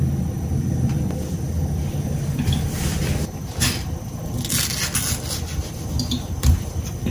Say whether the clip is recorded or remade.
recorded